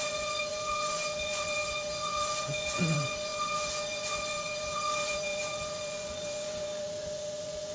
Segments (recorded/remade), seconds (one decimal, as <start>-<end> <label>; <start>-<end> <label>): 0.0-7.7 remade